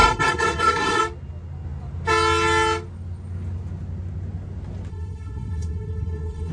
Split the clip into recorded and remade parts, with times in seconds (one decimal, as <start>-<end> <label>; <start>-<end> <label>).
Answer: 0.0-1.0 remade; 1.0-4.9 recorded; 4.9-6.5 remade